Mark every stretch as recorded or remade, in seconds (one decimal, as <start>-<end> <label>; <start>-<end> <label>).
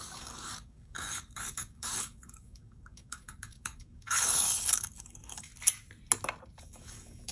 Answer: 0.0-5.5 remade; 5.5-6.6 recorded; 6.6-7.3 remade